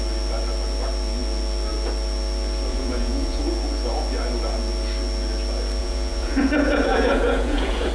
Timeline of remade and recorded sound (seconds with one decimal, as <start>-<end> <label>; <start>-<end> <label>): 0.0-2.7 recorded; 2.7-3.4 remade; 3.4-5.8 recorded; 5.8-7.9 remade